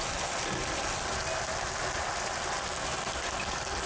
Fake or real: real